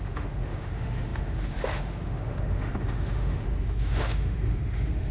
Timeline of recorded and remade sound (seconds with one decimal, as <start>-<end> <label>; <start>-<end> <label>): 0.0-5.1 remade